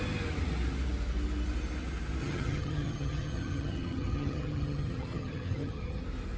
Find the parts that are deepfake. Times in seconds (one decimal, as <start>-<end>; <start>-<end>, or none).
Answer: 2.2-6.0